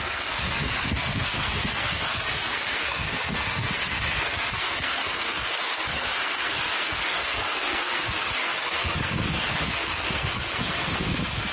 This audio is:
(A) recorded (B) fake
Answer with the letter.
B